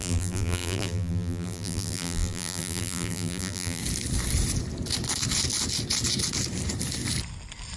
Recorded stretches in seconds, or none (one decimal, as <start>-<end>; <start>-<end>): 3.8-7.8